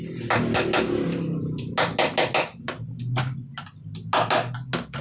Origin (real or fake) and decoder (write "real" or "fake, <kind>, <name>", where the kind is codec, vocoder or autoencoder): real